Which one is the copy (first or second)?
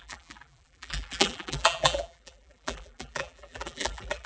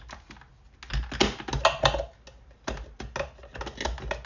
first